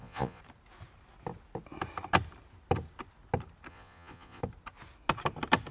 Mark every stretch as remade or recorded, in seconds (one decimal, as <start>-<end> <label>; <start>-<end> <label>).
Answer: 0.0-0.4 remade; 0.4-3.7 recorded; 3.7-4.4 remade; 4.4-5.7 recorded